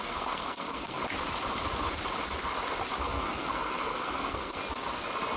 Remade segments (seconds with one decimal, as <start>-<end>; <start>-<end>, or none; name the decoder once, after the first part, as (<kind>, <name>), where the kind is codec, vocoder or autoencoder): 0.0-1.0 (codec, SNAC); 3.0-4.6